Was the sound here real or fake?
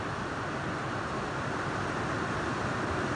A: real